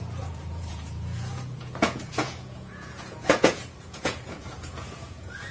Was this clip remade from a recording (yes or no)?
yes